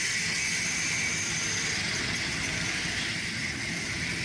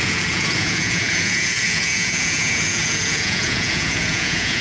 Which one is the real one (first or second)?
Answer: first